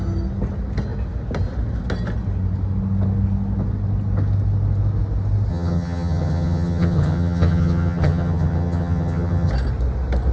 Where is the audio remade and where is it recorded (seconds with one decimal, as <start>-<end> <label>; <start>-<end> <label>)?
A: 0.0-5.5 recorded; 5.5-9.5 remade; 9.5-10.3 recorded